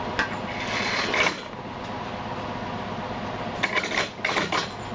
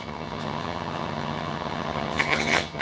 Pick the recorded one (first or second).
first